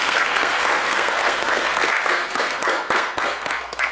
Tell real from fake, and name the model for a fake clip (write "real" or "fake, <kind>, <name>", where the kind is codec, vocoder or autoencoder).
fake, codec, SNAC